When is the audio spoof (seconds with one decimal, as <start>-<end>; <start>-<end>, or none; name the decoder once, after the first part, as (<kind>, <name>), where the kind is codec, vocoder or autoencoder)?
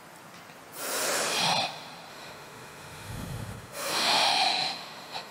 2.1-5.3 (autoencoder, DAC-VAE)